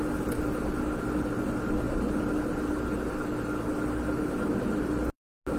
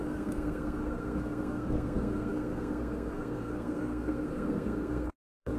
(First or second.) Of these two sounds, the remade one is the second